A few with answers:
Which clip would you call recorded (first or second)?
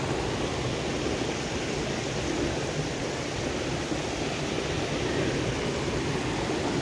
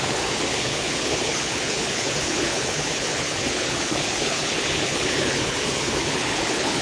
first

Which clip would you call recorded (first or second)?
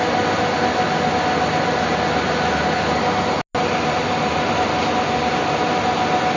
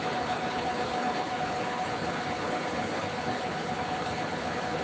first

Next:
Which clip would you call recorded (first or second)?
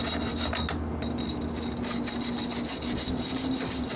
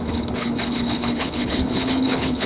first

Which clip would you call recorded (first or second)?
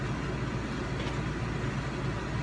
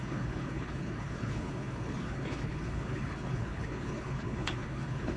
first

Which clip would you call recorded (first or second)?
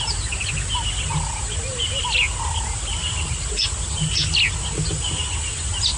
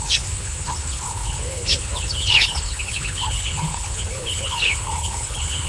first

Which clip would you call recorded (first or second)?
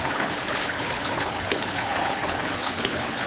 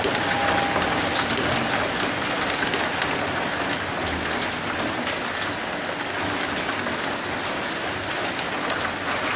second